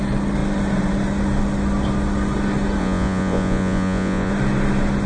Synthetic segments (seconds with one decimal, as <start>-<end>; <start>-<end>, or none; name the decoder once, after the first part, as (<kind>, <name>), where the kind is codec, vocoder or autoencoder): 2.8-4.3 (vocoder, Vocos)